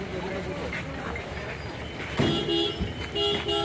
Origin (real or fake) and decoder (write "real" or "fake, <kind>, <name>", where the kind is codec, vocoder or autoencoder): real